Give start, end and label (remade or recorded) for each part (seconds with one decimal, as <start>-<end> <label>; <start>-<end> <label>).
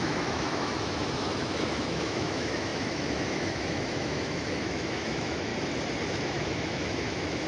0.0-5.5 remade; 5.5-6.1 recorded; 6.1-7.5 remade